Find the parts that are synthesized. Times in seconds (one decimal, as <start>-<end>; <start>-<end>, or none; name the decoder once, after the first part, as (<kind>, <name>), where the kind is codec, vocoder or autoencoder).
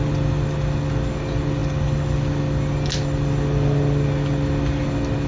none